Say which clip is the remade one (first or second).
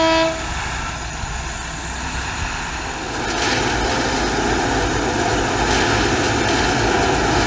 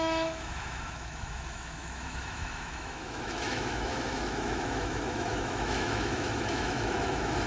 second